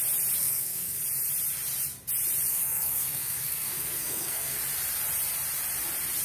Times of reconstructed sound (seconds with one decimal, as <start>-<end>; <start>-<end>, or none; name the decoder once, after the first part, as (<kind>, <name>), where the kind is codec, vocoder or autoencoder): 0.4-1.0 (codec, SNAC); 2.5-4.6

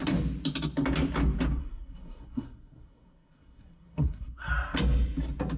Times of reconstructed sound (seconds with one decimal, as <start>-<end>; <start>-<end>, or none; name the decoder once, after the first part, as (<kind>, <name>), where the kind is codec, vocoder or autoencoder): 1.6-4.5 (codec, SNAC)

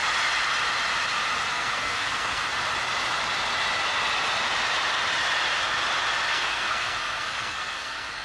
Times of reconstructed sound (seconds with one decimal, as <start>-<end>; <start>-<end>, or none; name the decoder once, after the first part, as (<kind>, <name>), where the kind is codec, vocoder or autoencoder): 1.5-2.5 (codec, SNAC); 6.3-8.2

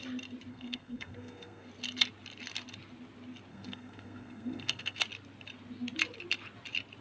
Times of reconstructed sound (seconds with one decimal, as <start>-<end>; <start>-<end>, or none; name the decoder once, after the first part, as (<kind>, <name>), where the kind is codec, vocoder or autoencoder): 0.5-1.7 (codec, SNAC); 3.5-5.0

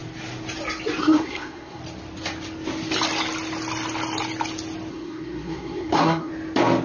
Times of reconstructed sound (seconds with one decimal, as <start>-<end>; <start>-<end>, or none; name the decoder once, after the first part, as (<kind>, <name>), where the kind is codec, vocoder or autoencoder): 1.0-1.8 (codec, SNAC); 4.9-6.3